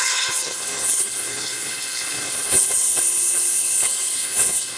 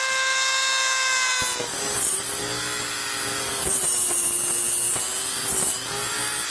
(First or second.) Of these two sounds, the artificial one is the first